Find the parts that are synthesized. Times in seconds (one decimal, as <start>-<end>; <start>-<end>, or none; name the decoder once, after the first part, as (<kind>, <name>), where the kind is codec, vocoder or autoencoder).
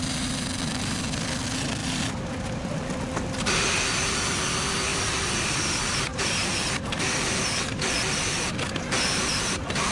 4.9-6.3 (vocoder, BigVGAN v2)